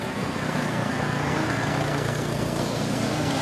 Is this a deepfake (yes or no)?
yes